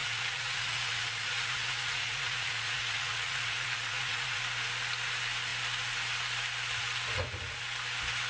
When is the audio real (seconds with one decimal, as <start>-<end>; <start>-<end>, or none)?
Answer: 4.4-8.3